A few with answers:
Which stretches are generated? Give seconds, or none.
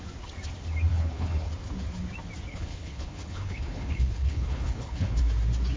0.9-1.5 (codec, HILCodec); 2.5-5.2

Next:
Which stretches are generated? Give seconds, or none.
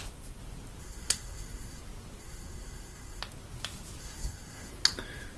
0.8-1.8 (codec, SNAC); 2.2-3.2; 4.0-4.7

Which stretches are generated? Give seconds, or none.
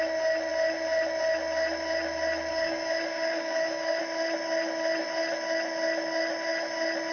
2.5-4.0 (codec, DAC)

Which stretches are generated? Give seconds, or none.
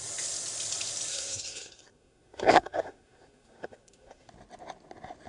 1.1-4.3 (codec, SNAC)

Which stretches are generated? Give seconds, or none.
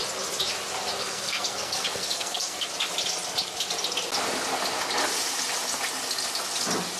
1.0-2.7 (codec, SNAC)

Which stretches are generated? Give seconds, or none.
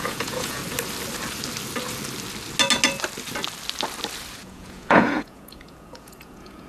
0.0-0.6 (vocoder, Vocos); 4.3-6.7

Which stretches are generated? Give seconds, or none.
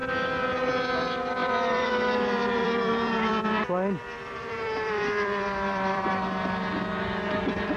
1.4-6.1 (vocoder, BigVGAN v2)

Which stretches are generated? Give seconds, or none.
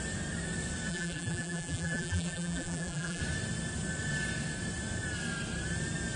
0.9-3.2 (vocoder, BigVGAN v2)